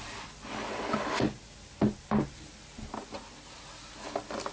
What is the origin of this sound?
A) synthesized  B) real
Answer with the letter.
B